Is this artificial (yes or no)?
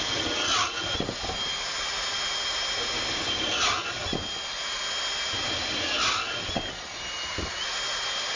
no